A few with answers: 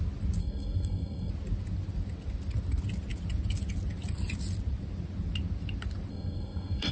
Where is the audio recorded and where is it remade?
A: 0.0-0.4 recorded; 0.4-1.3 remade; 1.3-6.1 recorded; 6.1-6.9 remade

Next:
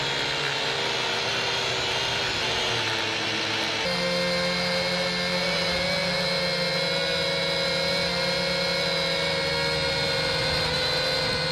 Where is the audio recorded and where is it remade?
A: 0.0-11.5 recorded

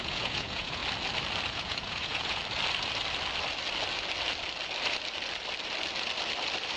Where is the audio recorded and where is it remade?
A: 0.0-0.8 remade; 0.8-1.5 recorded; 1.5-2.4 remade; 2.4-6.8 recorded

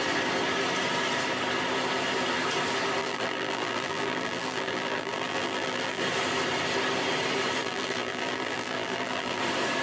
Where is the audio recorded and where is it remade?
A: 0.0-3.0 recorded; 3.0-6.0 remade; 6.0-7.6 recorded; 7.6-9.4 remade; 9.4-9.8 recorded

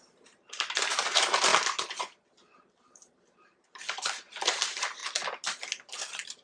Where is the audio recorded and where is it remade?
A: 0.0-1.5 remade; 1.5-2.7 recorded; 2.7-5.0 remade; 5.0-5.9 recorded; 5.9-6.4 remade

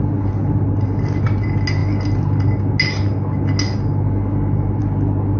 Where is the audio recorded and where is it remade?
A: 0.0-5.4 recorded

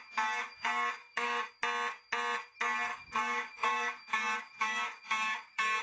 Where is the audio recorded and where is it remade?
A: 0.0-1.0 recorded; 1.0-1.5 remade; 1.5-2.9 recorded; 2.9-5.8 remade

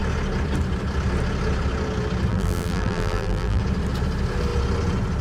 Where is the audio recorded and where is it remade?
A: 0.0-2.3 recorded; 2.3-3.6 remade; 3.6-5.2 recorded